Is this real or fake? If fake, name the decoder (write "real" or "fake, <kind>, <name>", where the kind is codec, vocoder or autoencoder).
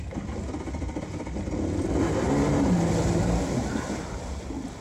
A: real